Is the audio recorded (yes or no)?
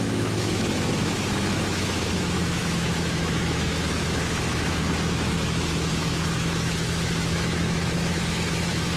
no